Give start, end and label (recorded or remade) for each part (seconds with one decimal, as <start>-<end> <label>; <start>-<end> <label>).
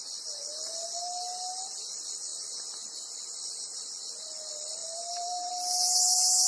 0.0-4.8 recorded; 4.8-5.5 remade; 5.5-6.5 recorded